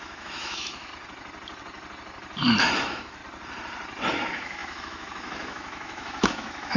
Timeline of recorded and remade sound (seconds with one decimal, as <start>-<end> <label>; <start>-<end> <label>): 0.0-0.9 remade; 0.9-2.8 recorded; 2.8-3.2 remade; 3.2-4.1 recorded; 4.1-6.8 remade